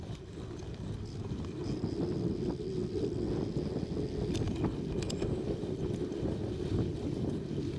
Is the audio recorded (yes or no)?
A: yes